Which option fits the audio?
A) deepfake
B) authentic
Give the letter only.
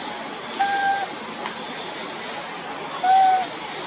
B